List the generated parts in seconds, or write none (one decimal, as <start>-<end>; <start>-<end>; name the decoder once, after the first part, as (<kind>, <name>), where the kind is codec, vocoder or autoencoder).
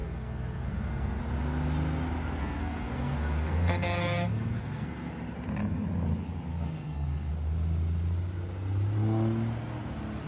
0.0-1.2 (codec, SNAC); 2.4-5.1; 6.5-7.3